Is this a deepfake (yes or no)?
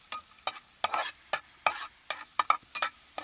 no